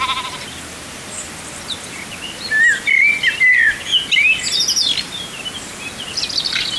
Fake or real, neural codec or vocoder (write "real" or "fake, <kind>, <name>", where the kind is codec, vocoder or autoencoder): real